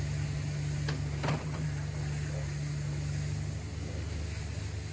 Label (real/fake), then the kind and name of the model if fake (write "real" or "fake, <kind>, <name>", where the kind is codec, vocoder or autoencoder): real